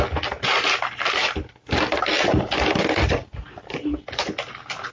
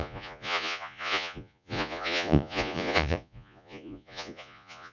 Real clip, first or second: first